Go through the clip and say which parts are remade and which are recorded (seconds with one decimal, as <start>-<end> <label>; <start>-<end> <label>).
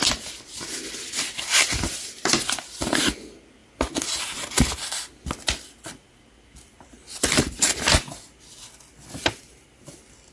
0.0-10.3 recorded